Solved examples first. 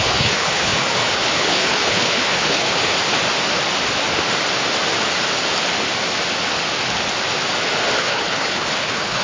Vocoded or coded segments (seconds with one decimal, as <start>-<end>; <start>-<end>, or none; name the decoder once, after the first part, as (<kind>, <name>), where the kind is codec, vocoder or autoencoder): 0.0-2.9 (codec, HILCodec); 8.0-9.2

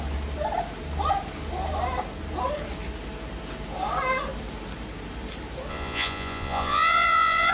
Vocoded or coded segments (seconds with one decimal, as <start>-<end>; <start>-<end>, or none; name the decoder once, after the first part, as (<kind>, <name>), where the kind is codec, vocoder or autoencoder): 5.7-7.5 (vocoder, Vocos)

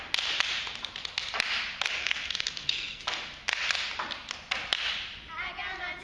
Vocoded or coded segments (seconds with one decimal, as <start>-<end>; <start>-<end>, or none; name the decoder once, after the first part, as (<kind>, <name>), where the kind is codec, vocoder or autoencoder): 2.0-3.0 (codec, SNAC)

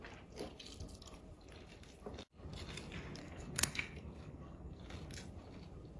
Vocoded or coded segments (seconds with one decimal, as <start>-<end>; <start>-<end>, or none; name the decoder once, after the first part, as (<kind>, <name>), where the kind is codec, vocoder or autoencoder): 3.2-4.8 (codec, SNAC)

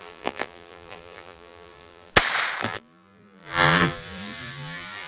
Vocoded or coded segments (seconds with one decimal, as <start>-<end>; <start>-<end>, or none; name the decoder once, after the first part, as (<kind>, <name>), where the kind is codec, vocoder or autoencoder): 0.0-2.1 (vocoder, BigVGAN v2); 2.6-5.1

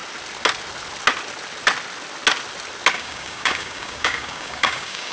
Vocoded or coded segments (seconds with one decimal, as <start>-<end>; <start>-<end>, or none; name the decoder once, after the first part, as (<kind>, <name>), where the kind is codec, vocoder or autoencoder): 2.9-5.1 (codec, DAC)

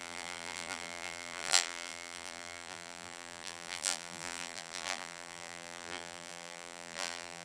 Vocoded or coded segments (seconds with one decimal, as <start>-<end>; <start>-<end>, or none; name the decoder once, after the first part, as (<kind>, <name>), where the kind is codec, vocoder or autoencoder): 0.0-7.4 (vocoder, BigVGAN v2)